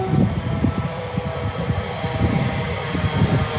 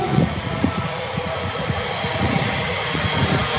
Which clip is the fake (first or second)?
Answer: second